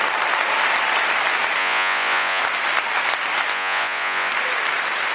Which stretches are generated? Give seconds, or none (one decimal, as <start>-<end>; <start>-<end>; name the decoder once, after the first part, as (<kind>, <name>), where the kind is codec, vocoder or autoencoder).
1.6-2.4 (vocoder, Vocos); 3.5-4.3